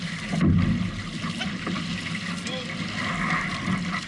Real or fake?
real